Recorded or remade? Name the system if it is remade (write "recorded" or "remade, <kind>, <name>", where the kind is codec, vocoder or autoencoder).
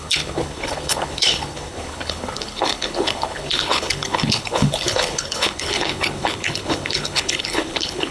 remade, codec, HILCodec